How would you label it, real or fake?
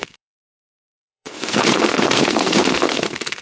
fake